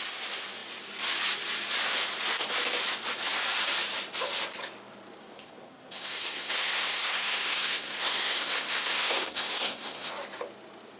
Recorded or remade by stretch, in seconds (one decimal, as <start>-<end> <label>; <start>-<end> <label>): 0.0-5.2 recorded; 5.2-10.1 remade; 10.1-11.0 recorded